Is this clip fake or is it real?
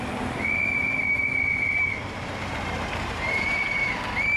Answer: fake